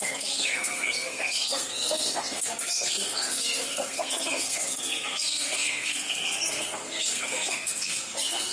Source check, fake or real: fake